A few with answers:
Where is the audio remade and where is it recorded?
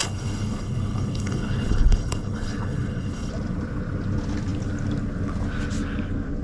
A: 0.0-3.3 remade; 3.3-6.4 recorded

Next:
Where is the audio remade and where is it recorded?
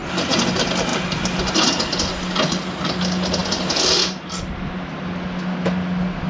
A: 0.0-6.3 recorded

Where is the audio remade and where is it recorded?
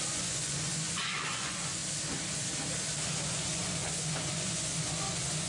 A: 0.0-1.8 remade; 1.8-3.3 recorded; 3.3-5.5 remade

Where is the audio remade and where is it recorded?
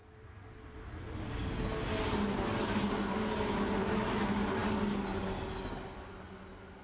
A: 0.0-6.8 recorded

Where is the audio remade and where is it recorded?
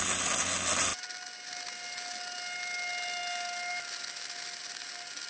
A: 0.0-5.3 recorded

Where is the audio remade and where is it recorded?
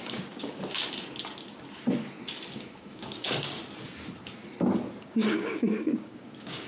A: 0.0-0.8 remade; 0.8-2.5 recorded; 2.5-3.6 remade; 3.6-5.0 recorded; 5.0-6.7 remade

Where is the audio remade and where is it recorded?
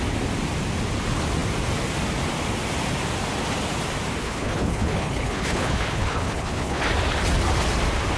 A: 0.0-4.2 recorded; 4.2-6.9 remade; 6.9-8.2 recorded